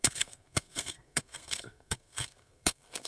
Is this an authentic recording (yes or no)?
no